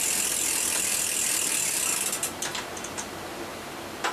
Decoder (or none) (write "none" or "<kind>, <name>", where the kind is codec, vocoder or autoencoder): none